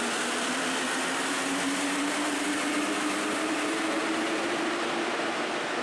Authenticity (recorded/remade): recorded